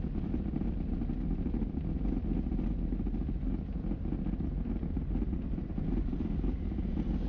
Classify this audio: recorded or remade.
recorded